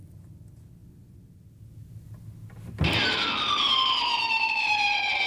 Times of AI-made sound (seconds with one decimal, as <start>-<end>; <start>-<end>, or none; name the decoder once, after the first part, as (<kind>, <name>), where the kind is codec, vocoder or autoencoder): none